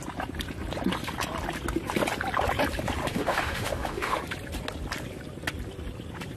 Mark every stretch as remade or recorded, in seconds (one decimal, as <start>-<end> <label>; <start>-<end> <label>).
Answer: 0.0-3.1 recorded; 3.1-4.2 remade; 4.2-6.4 recorded